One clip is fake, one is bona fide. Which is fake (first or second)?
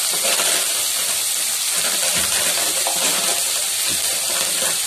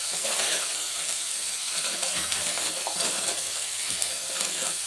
second